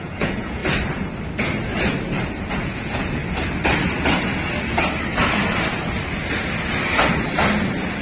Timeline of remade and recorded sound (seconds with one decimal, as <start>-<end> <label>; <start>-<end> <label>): 0.0-0.6 remade; 0.6-2.3 recorded; 2.3-3.2 remade; 3.2-8.0 recorded